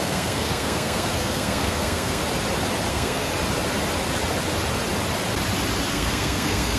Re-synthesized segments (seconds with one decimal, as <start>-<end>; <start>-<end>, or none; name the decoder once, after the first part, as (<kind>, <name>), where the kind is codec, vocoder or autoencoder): 0.0-2.2 (codec, SNAC); 2.9-3.3; 5.9-6.8